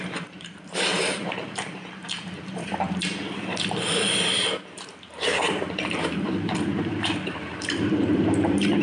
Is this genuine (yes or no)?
no